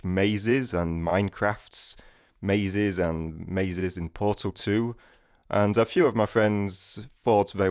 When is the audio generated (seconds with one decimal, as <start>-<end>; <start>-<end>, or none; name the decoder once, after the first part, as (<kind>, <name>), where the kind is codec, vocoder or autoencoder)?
0.0-1.1 (vocoder, Vocos); 1.7-3.8; 4.5-7.7